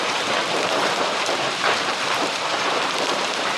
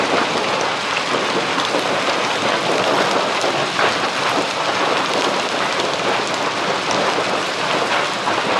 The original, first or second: second